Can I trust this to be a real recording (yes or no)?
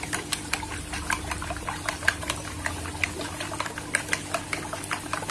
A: yes